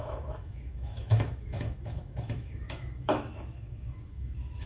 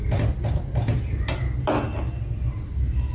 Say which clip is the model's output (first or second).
first